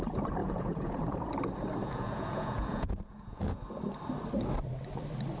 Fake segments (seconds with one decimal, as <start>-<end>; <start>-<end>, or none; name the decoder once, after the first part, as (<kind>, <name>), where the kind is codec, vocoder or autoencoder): 0.4-1.0 (vocoder, Vocos); 1.8-3.6